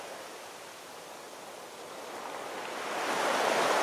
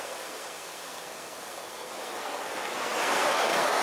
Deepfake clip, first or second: second